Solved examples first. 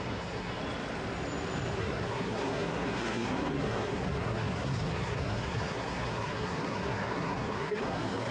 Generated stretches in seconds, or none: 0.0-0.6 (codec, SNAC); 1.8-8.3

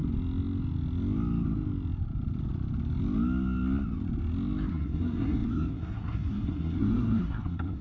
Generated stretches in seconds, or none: 4.7-7.8 (codec, SNAC)